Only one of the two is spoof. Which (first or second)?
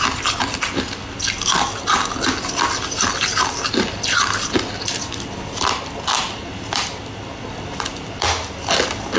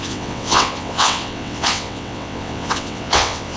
second